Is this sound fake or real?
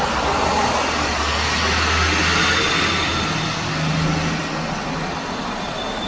real